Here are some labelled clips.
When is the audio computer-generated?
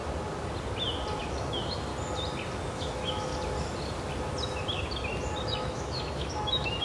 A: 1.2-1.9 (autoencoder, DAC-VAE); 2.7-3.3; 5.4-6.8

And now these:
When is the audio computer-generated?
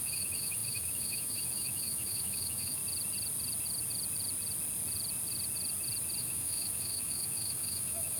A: 0.0-2.8 (autoencoder, DAC-VAE); 6.2-8.2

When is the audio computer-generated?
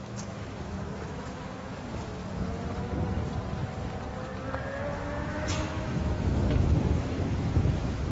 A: 0.0-1.7 (autoencoder, DAC-VAE); 4.9-8.1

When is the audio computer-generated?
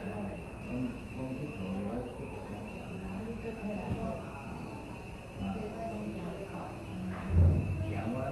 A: 0.0-2.4 (autoencoder, DAC-VAE); 3.2-4.0; 5.9-8.3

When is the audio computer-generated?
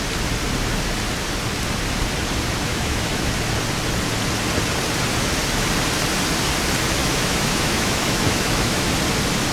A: 2.7-3.3 (autoencoder, DAC-VAE); 7.0-8.9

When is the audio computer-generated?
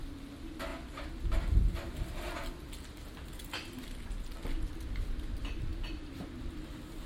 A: none